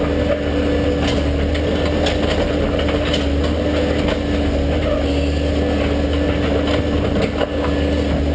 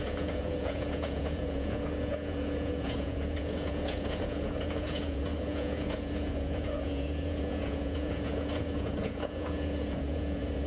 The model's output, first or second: second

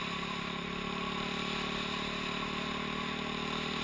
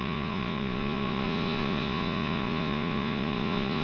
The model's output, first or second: second